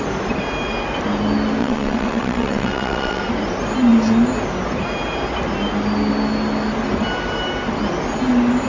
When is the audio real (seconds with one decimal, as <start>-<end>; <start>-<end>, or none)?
0.0-1.6; 3.2-8.7

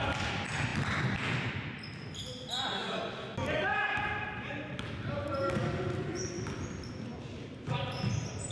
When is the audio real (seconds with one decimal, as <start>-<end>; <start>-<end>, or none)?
0.0-8.5

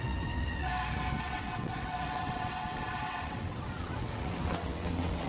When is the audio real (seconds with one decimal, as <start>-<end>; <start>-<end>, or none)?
0.7-1.2

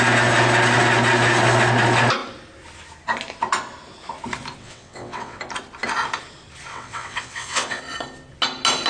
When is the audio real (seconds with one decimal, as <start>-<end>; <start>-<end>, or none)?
0.0-4.6; 5.4-6.7; 7.8-8.9

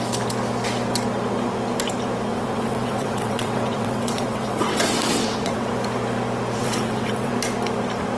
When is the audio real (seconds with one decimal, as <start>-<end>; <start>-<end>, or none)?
0.0-2.3; 5.7-6.6; 7.3-8.2